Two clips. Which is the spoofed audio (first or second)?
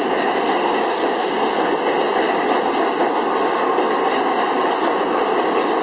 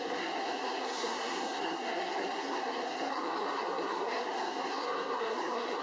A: second